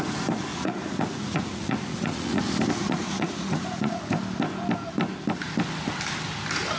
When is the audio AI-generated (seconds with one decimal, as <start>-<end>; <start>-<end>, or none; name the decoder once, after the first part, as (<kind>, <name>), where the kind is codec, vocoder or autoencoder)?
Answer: 0.5-2.4 (vocoder, Vocos); 2.8-4.0